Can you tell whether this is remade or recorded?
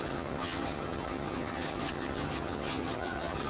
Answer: remade